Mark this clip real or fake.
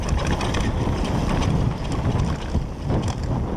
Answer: real